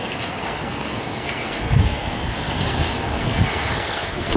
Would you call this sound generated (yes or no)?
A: yes